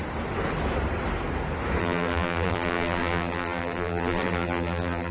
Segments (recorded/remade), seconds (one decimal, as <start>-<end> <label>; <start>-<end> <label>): 0.0-1.8 recorded; 1.8-5.1 remade